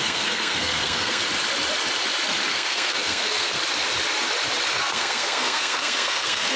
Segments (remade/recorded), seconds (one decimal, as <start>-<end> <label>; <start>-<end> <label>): 0.0-1.2 remade; 1.2-2.5 recorded; 2.5-3.6 remade; 3.6-4.7 recorded; 4.7-6.6 remade